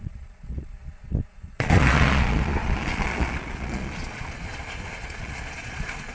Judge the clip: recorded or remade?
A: remade